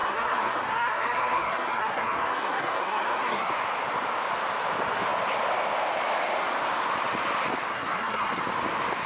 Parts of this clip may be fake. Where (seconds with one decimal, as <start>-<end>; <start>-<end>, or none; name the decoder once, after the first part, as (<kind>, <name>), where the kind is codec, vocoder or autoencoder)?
0.0-3.5 (codec, SNAC); 7.7-8.4